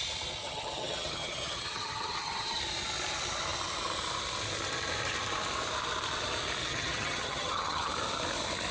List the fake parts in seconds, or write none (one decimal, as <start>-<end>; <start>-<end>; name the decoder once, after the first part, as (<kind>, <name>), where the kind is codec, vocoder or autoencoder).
0.4-2.6 (vocoder, HiFi-GAN); 6.6-7.9